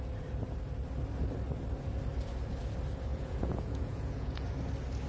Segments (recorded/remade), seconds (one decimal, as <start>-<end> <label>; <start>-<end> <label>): 0.0-3.1 recorded; 3.1-4.5 remade; 4.5-5.1 recorded